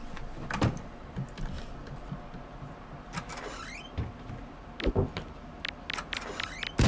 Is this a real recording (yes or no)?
yes